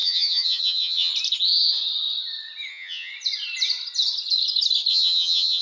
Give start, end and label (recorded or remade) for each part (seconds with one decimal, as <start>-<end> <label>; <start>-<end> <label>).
0.0-1.1 remade; 1.1-2.7 recorded; 2.7-3.1 remade; 3.1-4.9 recorded; 4.9-5.6 remade

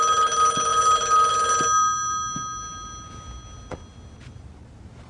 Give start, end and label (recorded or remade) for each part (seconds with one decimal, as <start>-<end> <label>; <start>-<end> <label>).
0.0-5.1 recorded

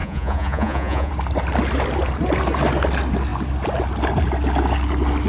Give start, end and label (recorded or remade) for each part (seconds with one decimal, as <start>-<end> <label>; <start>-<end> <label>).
0.0-1.1 remade; 1.1-5.3 recorded